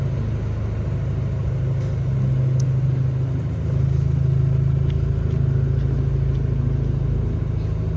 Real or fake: real